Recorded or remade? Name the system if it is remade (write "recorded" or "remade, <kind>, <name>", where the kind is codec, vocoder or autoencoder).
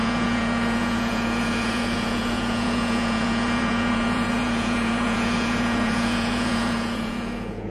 remade, vocoder, Vocos